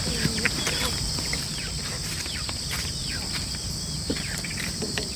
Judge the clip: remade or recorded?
remade